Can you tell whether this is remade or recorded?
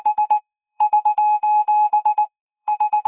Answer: remade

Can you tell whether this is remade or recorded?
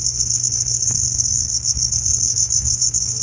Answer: remade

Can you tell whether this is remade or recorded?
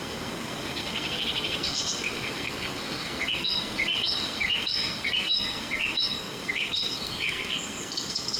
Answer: remade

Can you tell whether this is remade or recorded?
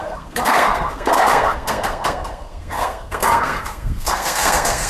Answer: remade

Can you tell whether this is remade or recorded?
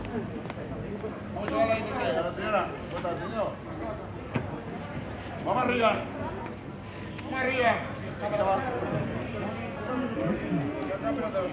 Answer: recorded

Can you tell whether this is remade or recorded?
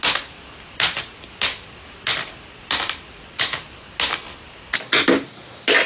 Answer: recorded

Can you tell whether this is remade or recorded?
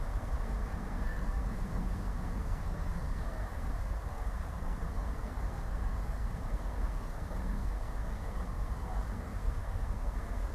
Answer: remade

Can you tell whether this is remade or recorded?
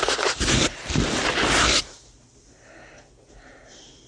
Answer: recorded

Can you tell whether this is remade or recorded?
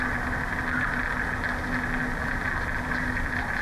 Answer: recorded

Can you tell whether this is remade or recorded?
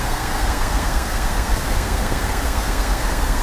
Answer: remade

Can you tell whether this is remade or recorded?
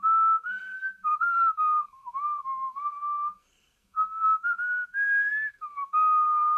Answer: remade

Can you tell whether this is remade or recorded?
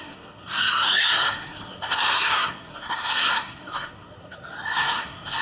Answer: remade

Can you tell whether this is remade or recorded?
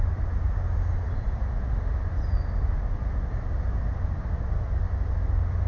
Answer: recorded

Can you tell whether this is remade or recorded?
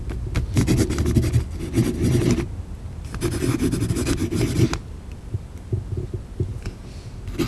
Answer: recorded